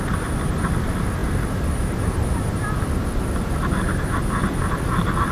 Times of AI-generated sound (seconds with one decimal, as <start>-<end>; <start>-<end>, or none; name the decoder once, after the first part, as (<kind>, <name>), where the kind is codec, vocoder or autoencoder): none